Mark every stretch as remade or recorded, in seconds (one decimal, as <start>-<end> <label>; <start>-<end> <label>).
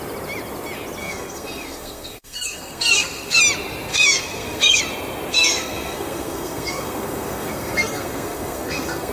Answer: 0.0-1.0 recorded; 1.0-3.4 remade; 3.4-3.9 recorded; 3.9-4.8 remade; 4.8-5.3 recorded; 5.3-9.1 remade